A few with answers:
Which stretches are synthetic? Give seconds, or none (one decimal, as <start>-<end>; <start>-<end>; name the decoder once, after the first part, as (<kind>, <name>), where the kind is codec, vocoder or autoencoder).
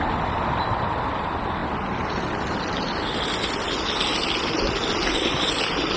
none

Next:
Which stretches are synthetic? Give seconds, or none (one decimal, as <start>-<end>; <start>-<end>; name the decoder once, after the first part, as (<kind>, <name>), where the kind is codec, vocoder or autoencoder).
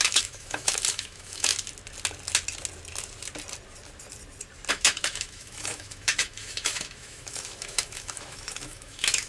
0.0-1.5 (autoencoder, DAC-VAE); 4.7-9.3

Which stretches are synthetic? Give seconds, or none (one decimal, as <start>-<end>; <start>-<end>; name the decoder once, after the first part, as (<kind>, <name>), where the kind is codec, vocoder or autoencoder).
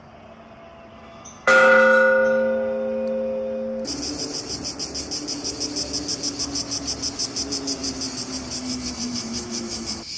0.9-1.7 (autoencoder, DAC-VAE); 8.6-10.2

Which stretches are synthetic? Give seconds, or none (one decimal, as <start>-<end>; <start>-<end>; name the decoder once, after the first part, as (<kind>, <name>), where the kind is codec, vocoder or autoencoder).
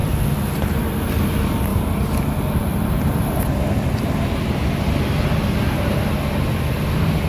none